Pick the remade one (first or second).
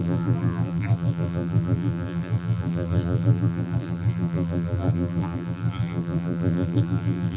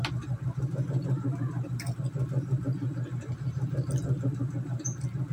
first